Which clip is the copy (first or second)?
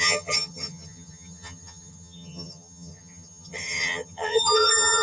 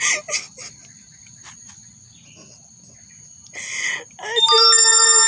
first